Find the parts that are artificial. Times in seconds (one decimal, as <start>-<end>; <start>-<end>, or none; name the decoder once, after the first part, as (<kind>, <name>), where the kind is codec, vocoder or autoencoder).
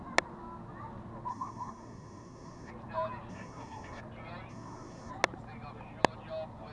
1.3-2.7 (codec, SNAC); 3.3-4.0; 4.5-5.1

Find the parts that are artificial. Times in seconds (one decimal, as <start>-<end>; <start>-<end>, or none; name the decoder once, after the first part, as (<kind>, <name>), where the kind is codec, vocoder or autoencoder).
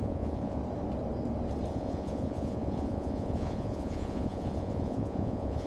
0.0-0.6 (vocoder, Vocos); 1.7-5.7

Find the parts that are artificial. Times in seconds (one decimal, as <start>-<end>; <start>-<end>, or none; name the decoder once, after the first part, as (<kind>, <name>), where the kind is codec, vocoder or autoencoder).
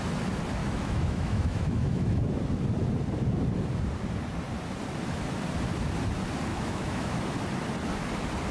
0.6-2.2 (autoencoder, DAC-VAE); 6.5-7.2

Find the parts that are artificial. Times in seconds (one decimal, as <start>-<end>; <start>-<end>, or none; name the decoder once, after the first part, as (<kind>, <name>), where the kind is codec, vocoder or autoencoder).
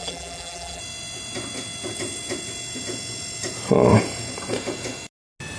0.0-0.8 (vocoder, BigVGAN v2)